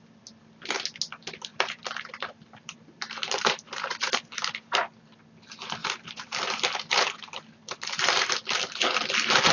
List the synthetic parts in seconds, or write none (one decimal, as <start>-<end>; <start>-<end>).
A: 1.5-4.7; 5.8-8.3